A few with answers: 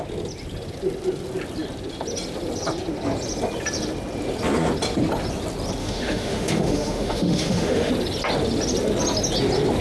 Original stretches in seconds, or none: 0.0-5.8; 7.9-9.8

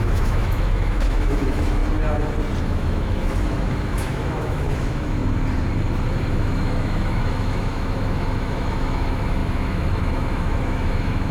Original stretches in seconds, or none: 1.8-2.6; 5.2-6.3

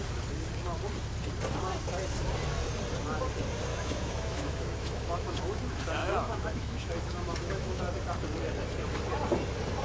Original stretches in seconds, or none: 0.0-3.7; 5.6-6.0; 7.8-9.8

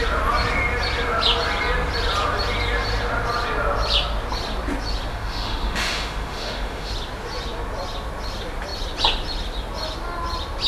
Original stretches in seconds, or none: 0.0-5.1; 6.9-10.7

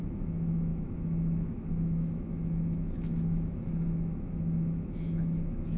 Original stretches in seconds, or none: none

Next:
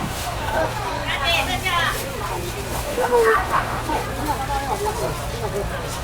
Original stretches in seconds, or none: 0.6-2.8; 4.0-6.0

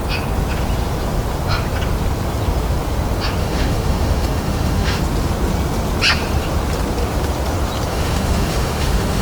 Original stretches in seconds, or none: 0.0-3.4; 5.0-7.9